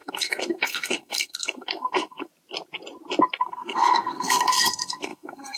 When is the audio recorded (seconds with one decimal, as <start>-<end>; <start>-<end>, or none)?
2.3-3.4